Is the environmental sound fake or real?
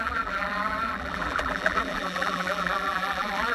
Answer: fake